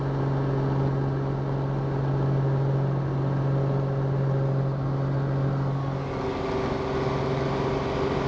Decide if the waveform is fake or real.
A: real